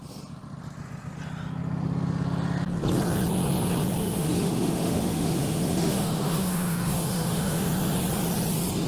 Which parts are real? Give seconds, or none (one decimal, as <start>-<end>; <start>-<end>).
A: 0.0-4.0; 7.7-8.9